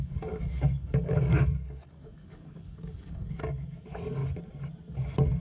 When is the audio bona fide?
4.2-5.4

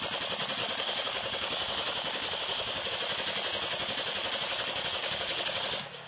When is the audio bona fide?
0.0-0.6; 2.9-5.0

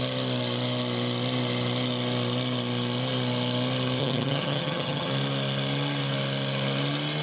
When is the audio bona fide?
0.0-4.0; 5.1-7.2

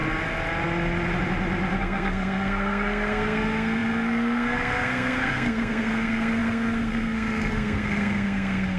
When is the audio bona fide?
0.0-1.8

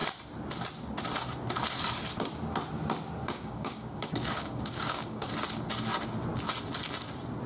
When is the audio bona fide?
0.0-3.2; 5.3-7.5

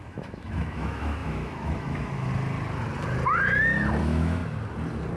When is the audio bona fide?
2.3-4.0; 4.4-5.2

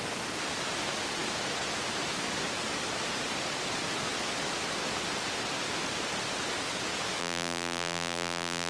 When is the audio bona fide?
0.0-7.2

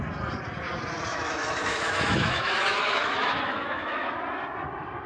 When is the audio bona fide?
0.0-1.1; 4.2-5.1